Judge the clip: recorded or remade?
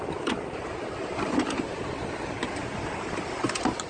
recorded